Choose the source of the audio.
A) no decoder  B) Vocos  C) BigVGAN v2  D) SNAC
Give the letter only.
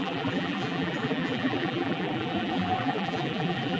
C